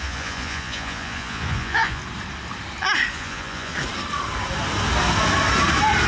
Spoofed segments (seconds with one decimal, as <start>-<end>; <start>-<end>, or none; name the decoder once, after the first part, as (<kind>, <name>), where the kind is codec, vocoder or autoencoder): 0.0-2.0 (vocoder, Vocos); 3.1-3.7